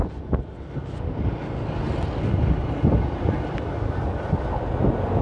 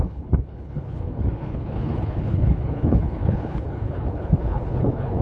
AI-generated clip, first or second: second